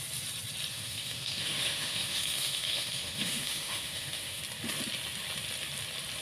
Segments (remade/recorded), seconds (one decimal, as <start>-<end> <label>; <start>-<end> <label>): 0.0-0.7 recorded; 0.7-4.4 remade; 4.4-6.2 recorded